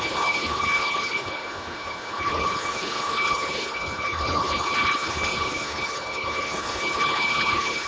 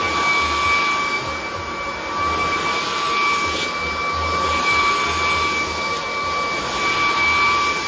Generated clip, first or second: first